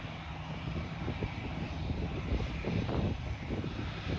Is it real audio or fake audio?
fake